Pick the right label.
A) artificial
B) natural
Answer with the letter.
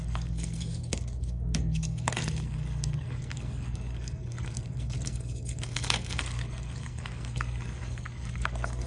A